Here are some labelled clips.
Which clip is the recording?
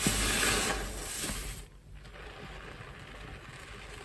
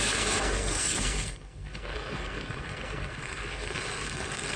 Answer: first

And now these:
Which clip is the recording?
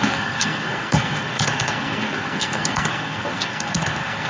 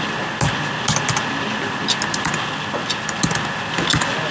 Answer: second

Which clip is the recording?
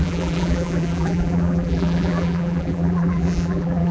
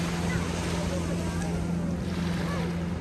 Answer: second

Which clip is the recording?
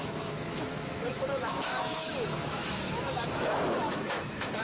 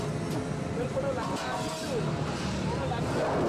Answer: second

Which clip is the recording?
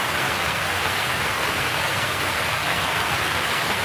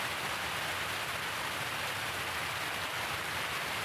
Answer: second